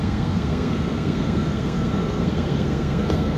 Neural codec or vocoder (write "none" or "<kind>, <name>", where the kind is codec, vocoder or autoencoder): codec, SNAC